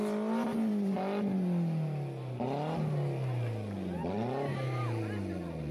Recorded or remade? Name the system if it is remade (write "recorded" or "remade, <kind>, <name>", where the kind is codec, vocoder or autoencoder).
recorded